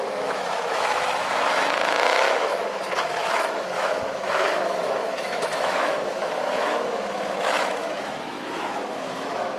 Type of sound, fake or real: fake